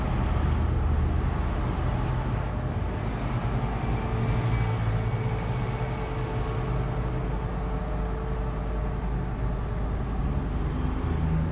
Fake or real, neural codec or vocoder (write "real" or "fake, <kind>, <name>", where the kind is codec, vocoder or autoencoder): real